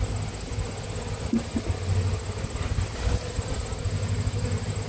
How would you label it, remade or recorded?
recorded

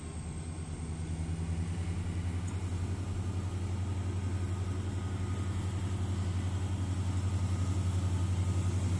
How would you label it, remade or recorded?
recorded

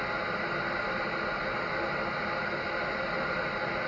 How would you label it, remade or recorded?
recorded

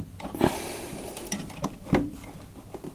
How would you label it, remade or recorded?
recorded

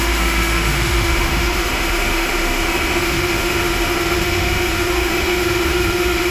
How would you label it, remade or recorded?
remade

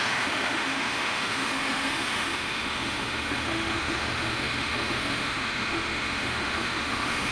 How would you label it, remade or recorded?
remade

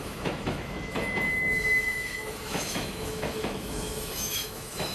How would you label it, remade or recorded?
remade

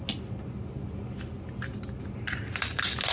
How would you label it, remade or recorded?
recorded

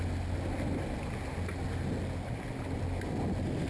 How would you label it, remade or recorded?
recorded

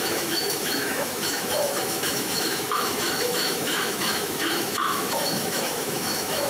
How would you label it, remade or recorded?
remade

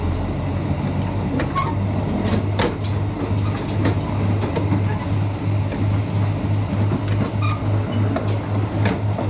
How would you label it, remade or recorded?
recorded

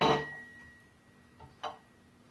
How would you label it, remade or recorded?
recorded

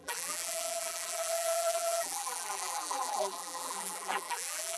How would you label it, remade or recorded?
remade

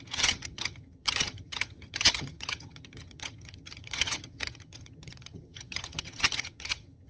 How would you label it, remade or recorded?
remade